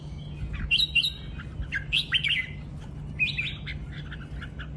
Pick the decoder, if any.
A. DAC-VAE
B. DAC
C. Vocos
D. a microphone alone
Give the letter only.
D